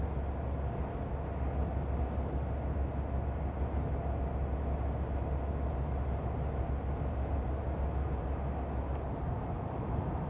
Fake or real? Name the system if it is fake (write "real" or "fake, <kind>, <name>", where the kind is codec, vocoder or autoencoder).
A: real